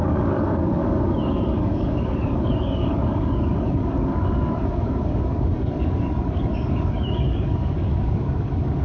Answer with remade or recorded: remade